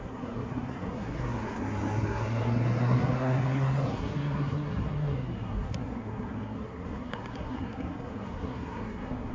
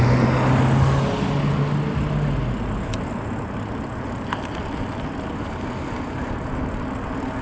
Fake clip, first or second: first